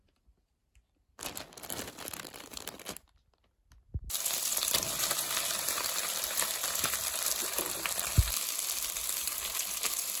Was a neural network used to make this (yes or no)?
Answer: yes